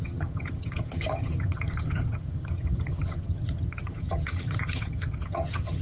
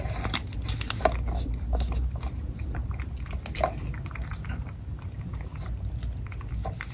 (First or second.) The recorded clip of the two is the second